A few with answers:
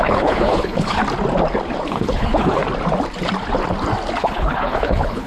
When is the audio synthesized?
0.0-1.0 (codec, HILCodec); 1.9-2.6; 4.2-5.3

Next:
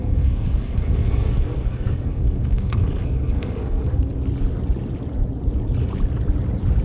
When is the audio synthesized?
0.0-4.1 (codec, SNAC)

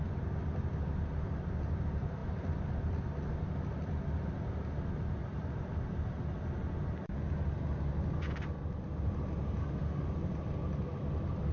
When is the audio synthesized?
9.6-10.1 (autoencoder, DAC-VAE)

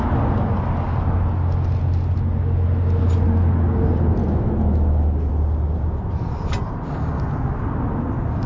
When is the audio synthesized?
4.2-5.3 (autoencoder, DAC-VAE)

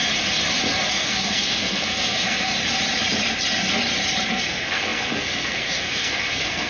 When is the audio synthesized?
0.9-2.5 (codec, SNAC); 4.3-6.7

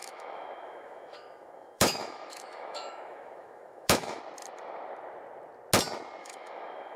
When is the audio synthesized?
0.0-4.2 (autoencoder, DAC-VAE); 6.2-7.0

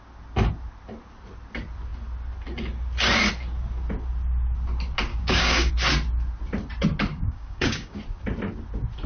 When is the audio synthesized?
5.1-5.7 (codec, DAC); 7.1-8.0

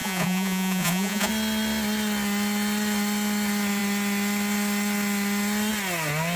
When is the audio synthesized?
0.0-1.3 (vocoder, Vocos)